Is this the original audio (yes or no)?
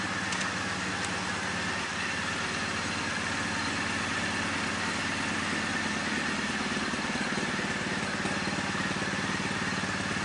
yes